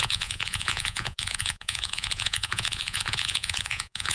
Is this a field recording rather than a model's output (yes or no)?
no